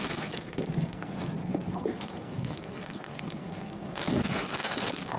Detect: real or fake fake